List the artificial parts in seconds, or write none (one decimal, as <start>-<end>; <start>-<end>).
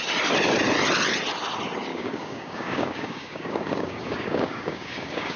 1.9-5.4